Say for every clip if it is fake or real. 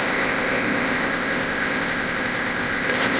fake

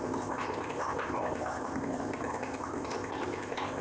fake